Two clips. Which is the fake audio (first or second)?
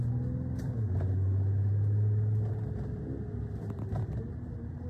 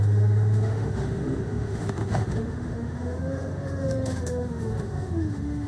second